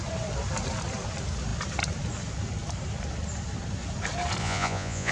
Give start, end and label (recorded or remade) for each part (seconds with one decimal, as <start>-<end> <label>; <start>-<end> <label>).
0.0-4.4 recorded; 4.4-5.1 remade